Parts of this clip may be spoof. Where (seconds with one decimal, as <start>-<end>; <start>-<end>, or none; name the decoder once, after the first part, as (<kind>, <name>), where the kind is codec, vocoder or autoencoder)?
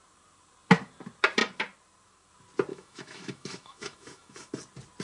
2.7-4.5 (autoencoder, DAC-VAE)